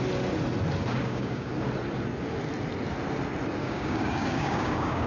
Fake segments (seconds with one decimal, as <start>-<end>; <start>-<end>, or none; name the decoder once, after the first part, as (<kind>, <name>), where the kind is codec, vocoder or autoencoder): 0.9-1.5 (codec, DAC); 3.6-5.1